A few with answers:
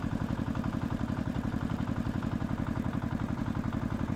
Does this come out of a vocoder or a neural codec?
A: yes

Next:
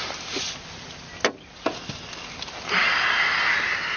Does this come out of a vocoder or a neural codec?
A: no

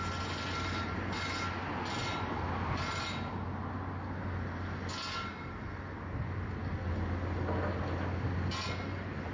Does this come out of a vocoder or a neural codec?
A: no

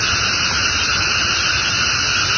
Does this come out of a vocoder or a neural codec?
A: no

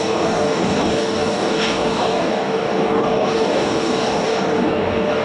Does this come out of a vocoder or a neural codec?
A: yes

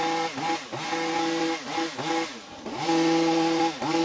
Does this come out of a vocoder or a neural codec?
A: no